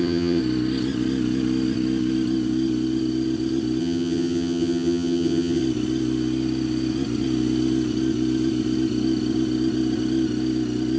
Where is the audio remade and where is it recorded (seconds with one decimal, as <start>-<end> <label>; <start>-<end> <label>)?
0.0-0.4 remade; 0.4-3.8 recorded; 3.8-5.6 remade; 5.6-11.0 recorded